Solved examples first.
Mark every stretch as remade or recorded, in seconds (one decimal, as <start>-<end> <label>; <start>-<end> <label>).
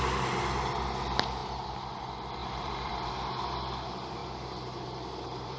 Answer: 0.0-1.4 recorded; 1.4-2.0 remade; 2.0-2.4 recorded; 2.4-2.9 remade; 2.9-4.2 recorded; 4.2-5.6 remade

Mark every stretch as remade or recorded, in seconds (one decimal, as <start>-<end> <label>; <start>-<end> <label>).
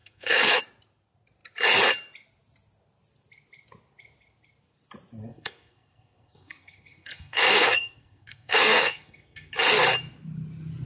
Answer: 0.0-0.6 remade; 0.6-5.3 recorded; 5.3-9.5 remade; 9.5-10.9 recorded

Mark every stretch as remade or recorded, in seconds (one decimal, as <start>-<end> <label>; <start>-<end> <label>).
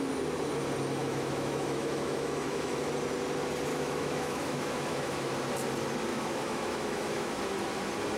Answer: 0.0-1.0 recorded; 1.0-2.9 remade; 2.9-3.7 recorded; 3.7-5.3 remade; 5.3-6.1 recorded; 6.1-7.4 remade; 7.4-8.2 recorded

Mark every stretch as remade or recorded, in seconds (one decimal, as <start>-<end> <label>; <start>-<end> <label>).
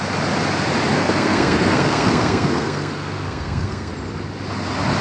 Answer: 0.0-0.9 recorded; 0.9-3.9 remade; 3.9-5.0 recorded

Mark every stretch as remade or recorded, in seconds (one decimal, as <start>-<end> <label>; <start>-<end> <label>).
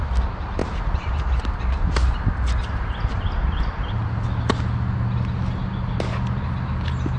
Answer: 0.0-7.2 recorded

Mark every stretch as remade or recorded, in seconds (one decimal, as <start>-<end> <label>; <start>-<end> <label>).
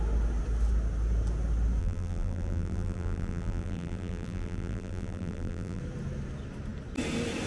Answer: 0.0-1.8 recorded; 1.8-5.8 remade; 5.8-7.5 recorded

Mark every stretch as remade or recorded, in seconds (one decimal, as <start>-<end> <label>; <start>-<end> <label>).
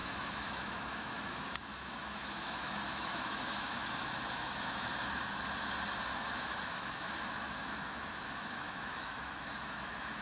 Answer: 0.0-4.9 remade; 4.9-6.2 recorded; 6.2-10.2 remade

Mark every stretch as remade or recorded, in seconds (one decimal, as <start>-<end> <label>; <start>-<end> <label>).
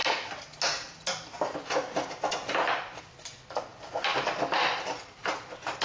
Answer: 0.0-5.8 recorded